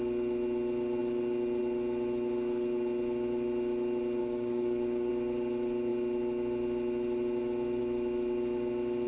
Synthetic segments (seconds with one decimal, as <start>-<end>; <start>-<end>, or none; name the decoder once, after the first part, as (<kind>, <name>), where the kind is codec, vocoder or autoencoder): 4.2-5.1 (codec, DAC)